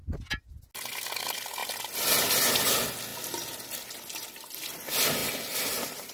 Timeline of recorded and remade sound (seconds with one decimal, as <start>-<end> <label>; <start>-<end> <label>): 0.0-5.2 recorded; 5.2-6.1 remade